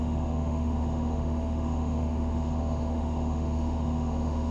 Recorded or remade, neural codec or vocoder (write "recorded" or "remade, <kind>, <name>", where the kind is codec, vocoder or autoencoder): remade, autoencoder, DAC-VAE